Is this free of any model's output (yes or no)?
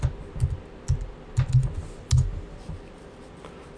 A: yes